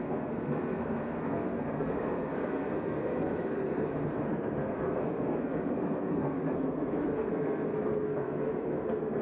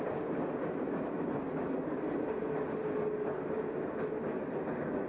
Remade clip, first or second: first